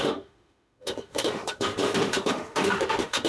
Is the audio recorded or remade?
remade